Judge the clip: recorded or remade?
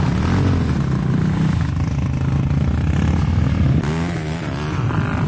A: recorded